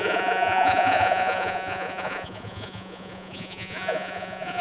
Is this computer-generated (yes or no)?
yes